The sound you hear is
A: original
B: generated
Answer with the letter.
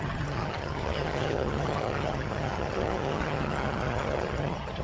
B